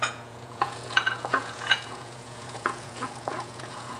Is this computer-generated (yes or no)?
yes